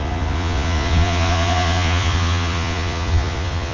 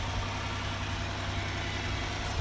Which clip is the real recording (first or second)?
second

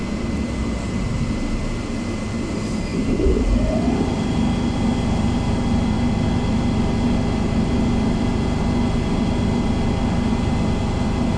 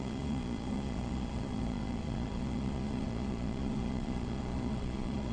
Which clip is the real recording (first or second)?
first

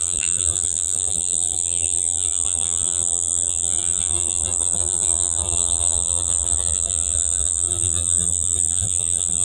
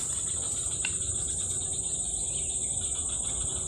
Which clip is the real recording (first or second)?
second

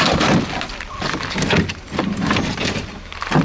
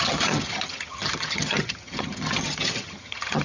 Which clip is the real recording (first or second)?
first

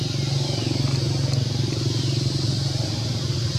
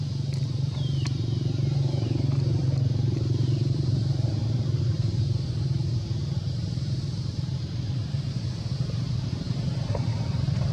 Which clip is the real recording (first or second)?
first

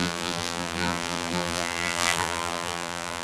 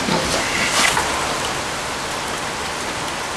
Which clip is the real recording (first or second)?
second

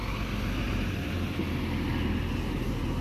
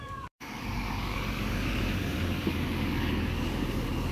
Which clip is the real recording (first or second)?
first